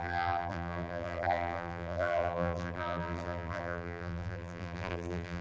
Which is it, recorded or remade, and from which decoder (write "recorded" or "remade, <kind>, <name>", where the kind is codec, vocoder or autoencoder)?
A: remade, vocoder, BigVGAN v2